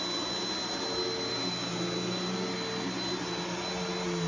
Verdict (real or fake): real